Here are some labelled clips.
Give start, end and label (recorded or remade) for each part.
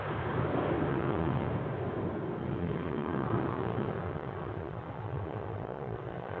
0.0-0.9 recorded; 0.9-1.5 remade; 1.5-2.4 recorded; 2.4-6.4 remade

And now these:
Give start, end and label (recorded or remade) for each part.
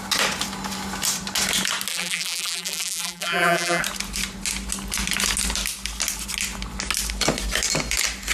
0.0-1.9 recorded; 1.9-3.8 remade; 3.8-8.3 recorded